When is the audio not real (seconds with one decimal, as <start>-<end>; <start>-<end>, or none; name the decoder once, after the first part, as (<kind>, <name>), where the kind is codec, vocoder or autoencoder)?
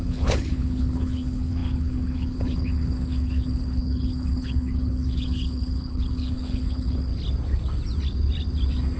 0.0-7.1 (codec, HILCodec)